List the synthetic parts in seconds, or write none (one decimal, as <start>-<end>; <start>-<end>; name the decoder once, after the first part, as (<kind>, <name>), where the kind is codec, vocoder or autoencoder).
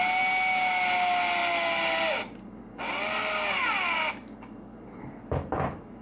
none